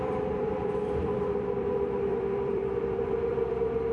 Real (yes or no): no